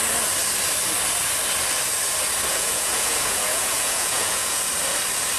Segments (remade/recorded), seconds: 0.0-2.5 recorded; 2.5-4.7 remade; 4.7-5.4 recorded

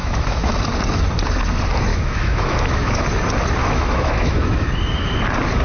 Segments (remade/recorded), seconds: 0.0-0.6 remade; 0.6-1.9 recorded; 1.9-3.0 remade; 3.0-3.6 recorded; 3.6-4.7 remade; 4.7-5.6 recorded

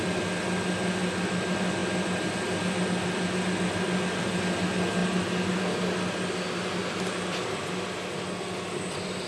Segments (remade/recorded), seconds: 0.0-9.3 recorded

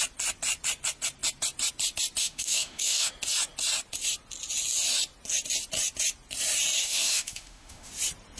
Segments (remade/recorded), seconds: 0.0-2.2 recorded; 2.2-3.1 remade; 3.1-6.8 recorded; 6.8-7.9 remade; 7.9-8.4 recorded

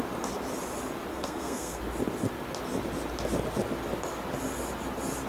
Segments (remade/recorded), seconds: 0.0-1.1 recorded; 1.1-1.8 remade; 1.8-5.3 recorded

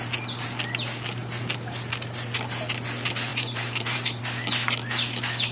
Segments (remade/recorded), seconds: 0.0-3.3 recorded; 3.3-4.2 remade; 4.2-5.5 recorded